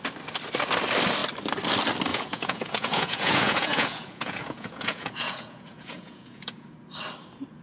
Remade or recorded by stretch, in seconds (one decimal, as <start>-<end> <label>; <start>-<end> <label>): 0.0-2.1 recorded; 2.1-6.7 remade; 6.7-7.6 recorded